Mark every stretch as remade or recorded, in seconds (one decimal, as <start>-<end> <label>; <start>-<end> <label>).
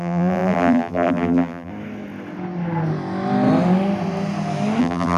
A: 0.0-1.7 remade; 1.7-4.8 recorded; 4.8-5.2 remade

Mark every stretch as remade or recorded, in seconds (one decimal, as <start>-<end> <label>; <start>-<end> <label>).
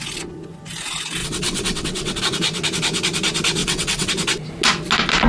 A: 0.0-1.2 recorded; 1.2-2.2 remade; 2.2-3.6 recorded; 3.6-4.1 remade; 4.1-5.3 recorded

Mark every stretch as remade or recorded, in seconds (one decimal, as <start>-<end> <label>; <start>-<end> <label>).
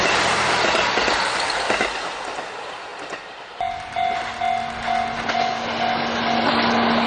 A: 0.0-7.1 recorded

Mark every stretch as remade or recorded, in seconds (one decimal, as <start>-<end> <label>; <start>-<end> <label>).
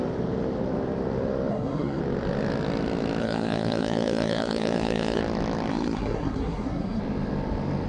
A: 0.0-1.5 recorded; 1.5-2.0 remade; 2.0-3.2 recorded; 3.2-5.2 remade; 5.2-5.7 recorded; 5.7-7.0 remade; 7.0-7.9 recorded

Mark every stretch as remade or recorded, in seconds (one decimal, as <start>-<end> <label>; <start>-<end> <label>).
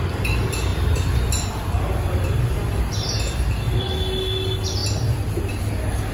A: 0.0-6.1 recorded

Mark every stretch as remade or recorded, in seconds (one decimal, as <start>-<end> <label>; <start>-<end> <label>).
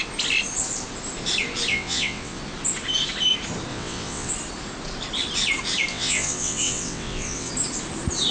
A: 0.0-1.7 recorded; 1.7-2.4 remade; 2.4-3.7 recorded; 3.7-4.3 remade; 4.3-5.9 recorded; 5.9-7.5 remade; 7.5-8.3 recorded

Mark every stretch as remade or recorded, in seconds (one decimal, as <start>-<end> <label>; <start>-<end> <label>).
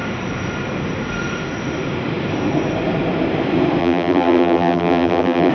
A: 0.0-3.8 recorded; 3.8-5.5 remade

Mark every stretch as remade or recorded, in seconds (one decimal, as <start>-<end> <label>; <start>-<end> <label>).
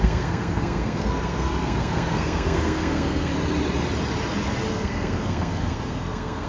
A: 0.0-3.3 remade; 3.3-4.7 recorded; 4.7-6.5 remade